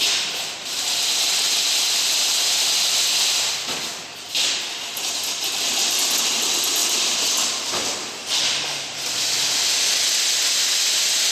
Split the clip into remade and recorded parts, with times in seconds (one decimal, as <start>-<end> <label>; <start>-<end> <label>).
0.0-11.3 recorded